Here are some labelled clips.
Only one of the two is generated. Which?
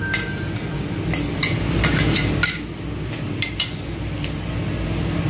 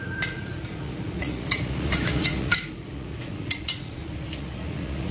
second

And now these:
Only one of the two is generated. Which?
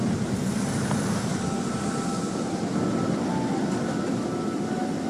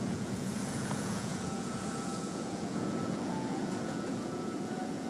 second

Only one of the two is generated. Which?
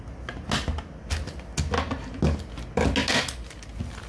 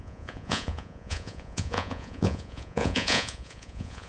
second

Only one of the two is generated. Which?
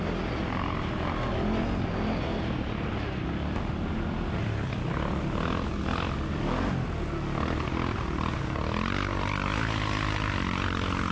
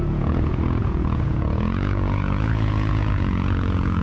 second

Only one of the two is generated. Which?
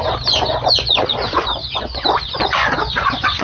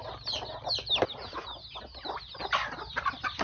first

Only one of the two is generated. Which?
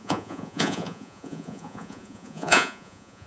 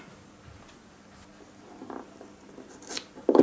first